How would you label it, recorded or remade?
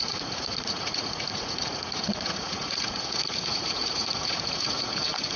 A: remade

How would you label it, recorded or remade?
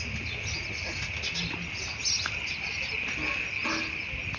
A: recorded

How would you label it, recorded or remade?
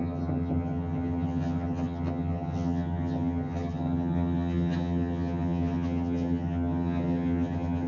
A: remade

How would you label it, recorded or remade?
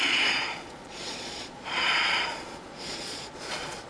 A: remade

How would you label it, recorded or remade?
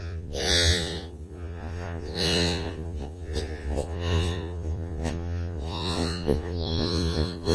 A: remade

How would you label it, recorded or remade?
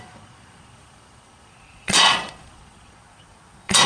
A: remade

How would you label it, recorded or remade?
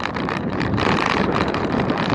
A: remade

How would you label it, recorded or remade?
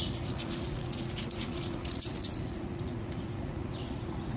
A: remade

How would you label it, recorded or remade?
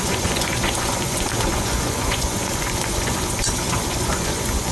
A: remade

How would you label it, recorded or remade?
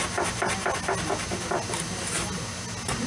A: recorded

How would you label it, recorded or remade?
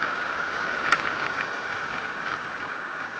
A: remade